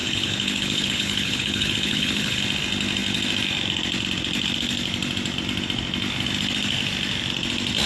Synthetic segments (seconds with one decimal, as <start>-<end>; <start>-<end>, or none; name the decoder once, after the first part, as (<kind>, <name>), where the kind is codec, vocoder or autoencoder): 0.0-2.4 (codec, HILCodec)